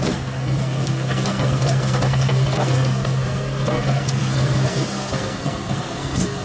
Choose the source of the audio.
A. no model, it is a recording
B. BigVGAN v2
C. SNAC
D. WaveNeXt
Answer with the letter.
C